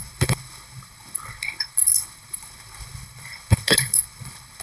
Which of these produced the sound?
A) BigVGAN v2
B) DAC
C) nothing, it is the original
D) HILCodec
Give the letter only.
D